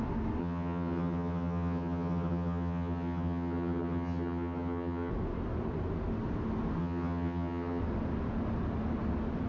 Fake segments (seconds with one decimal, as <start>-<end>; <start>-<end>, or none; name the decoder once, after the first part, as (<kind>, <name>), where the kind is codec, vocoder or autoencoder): 0.4-5.1 (vocoder, HiFi-GAN); 6.8-7.8